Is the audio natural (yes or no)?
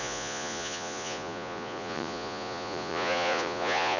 no